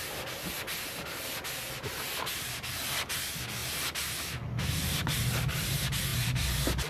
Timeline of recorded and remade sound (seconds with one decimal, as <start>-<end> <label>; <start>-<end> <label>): 0.0-6.1 recorded; 6.1-6.9 remade